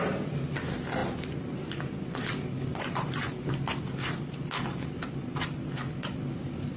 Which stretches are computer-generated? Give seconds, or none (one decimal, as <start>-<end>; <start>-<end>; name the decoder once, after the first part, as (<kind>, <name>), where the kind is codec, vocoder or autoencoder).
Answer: none